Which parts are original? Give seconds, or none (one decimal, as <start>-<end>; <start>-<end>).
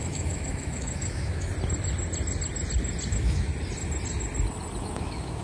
1.5-3.1; 3.5-4.8